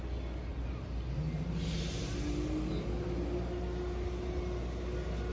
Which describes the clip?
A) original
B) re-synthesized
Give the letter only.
A